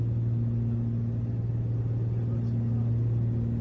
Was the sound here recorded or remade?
recorded